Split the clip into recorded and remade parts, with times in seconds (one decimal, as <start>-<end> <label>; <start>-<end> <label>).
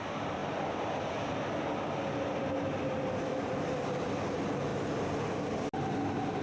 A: 0.0-6.4 recorded